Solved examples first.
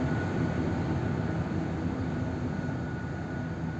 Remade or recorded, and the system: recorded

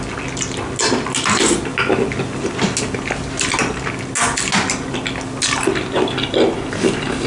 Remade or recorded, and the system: recorded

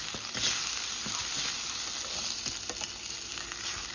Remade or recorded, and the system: recorded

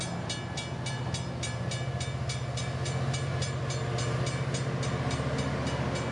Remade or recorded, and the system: recorded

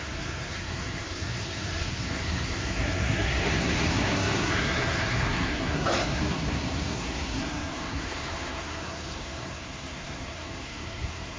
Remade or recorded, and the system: remade, codec, SNAC